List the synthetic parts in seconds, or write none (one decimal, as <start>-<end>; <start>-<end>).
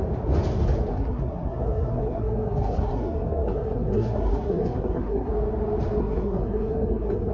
0.9-5.3; 6.0-7.3